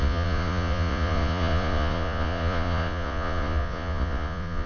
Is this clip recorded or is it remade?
remade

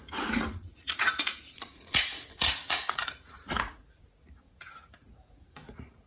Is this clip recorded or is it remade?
remade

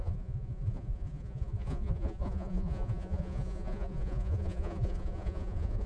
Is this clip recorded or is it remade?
remade